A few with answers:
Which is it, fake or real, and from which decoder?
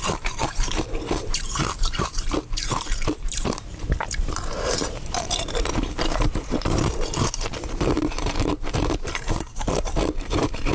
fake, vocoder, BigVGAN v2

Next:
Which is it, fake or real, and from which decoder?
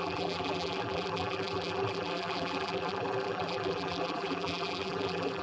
fake, vocoder, BigVGAN v2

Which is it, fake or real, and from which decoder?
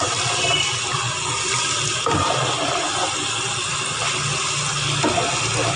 real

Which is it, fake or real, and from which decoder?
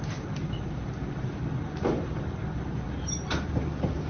fake, vocoder, BigVGAN v2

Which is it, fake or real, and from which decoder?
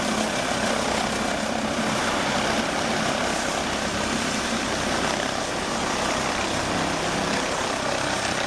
real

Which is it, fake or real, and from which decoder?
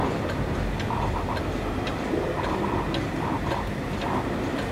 real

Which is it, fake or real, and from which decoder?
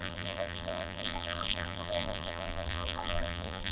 fake, vocoder, BigVGAN v2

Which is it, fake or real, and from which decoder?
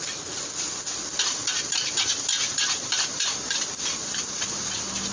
real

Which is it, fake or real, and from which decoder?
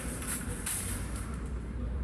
fake, vocoder, BigVGAN v2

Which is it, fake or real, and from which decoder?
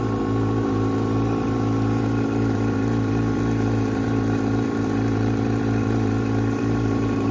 fake, vocoder, BigVGAN v2